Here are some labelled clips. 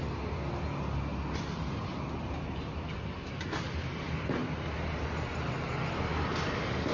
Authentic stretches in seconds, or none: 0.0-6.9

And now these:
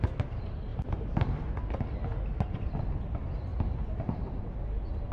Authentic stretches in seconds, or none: 0.0-0.7; 1.5-3.5; 4.4-5.1

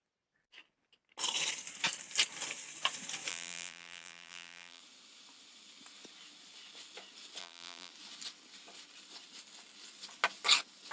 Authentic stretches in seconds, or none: 0.0-3.3; 4.8-7.4; 7.9-10.9

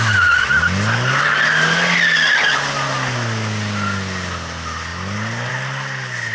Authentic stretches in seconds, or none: 0.0-6.3

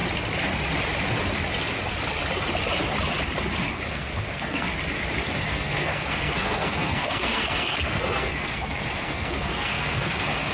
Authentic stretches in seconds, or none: 0.0-3.9; 4.7-5.4

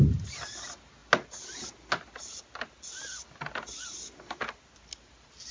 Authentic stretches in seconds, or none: 0.0-5.5